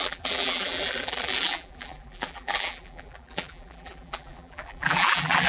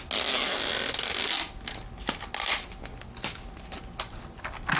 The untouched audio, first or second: second